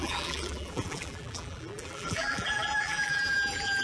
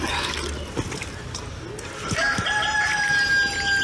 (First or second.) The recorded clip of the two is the second